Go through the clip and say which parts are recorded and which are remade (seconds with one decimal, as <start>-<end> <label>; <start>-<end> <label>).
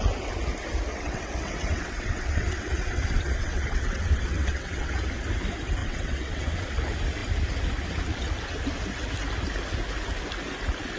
0.0-0.9 recorded; 0.9-5.1 remade; 5.1-5.8 recorded; 5.8-6.4 remade; 6.4-11.0 recorded